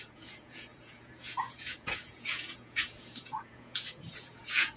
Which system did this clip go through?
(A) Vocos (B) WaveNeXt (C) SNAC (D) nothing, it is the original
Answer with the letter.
A